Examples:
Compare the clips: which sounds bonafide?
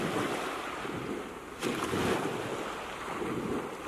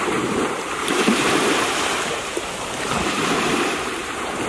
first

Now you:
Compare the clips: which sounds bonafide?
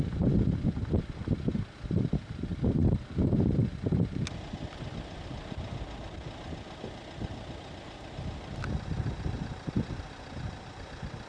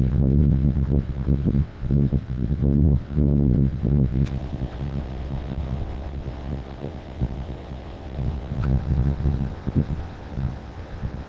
first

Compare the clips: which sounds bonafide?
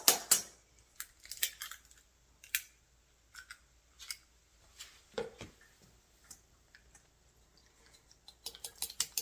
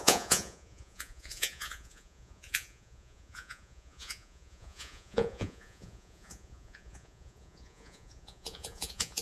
first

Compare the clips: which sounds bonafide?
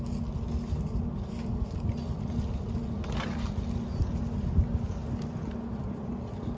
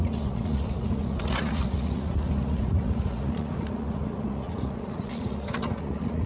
first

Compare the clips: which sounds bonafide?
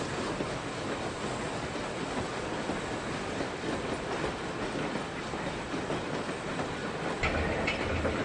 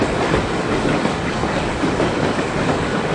first